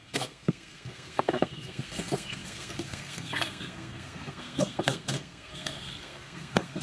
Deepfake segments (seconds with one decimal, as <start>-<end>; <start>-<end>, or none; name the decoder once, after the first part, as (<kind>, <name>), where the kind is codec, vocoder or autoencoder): 0.0-6.8 (codec, SNAC)